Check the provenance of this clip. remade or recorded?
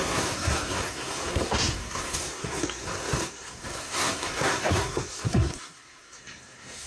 remade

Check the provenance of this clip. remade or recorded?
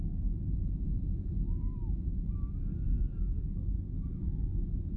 recorded